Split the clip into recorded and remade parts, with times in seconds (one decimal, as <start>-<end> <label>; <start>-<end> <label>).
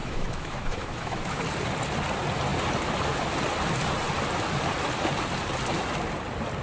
0.0-1.4 remade; 1.4-6.6 recorded